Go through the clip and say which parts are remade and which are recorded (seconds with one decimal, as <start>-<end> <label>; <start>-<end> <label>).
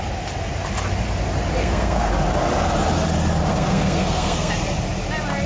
0.0-1.6 recorded; 1.6-2.1 remade; 2.1-3.5 recorded; 3.5-4.5 remade; 4.5-5.5 recorded